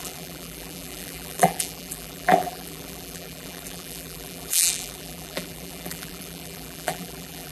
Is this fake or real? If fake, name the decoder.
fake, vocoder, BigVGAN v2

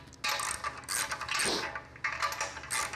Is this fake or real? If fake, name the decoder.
real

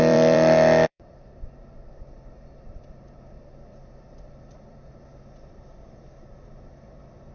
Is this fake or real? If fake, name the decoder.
fake, vocoder, BigVGAN v2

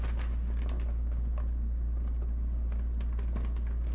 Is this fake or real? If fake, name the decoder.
real